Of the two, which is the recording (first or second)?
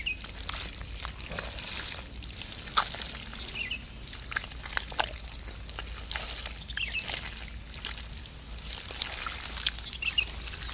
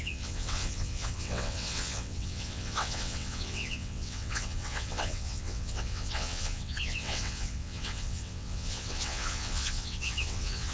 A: first